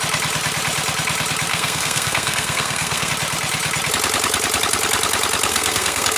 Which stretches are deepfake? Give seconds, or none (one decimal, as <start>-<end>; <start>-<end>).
1.5-3.1; 5.5-6.2